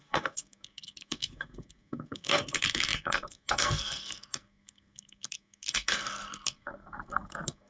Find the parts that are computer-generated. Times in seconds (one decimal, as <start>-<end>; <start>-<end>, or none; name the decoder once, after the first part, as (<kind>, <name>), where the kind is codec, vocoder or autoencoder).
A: 0.0-7.7 (codec, SNAC)